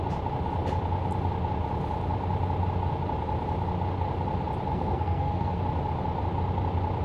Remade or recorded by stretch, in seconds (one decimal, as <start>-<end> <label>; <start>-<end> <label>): 0.0-4.7 recorded; 4.7-5.6 remade; 5.6-7.0 recorded